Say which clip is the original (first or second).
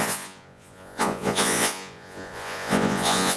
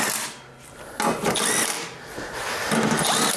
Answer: second